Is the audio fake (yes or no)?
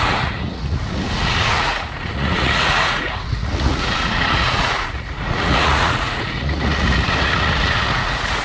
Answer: yes